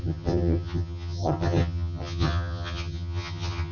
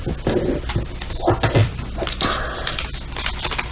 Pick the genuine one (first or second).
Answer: second